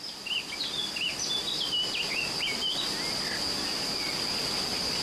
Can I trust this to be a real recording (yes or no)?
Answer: yes